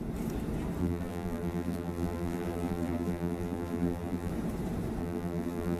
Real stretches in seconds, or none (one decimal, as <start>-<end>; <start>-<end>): 0.0-0.8; 4.3-5.0